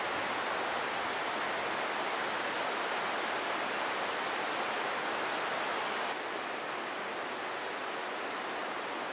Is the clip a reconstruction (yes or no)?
no